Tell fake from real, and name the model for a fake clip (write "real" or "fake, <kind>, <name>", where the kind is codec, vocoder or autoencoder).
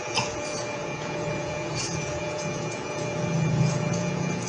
fake, vocoder, Vocos